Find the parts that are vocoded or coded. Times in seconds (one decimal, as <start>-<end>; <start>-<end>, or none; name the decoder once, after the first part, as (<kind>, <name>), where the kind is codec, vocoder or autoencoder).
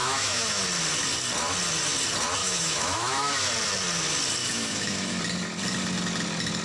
0.0-0.6 (autoencoder, DAC-VAE); 2.4-3.5; 4.4-5.2